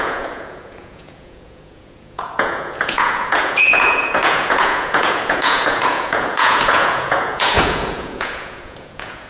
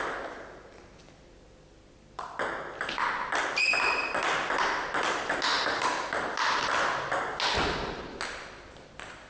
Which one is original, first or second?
second